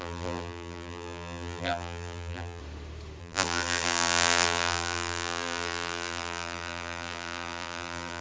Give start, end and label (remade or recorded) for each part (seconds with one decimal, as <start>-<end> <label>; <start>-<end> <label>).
0.0-2.6 remade; 2.6-3.2 recorded; 3.2-8.2 remade